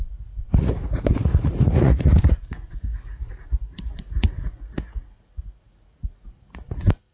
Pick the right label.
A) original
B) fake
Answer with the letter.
B